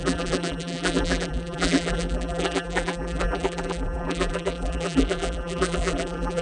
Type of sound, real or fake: fake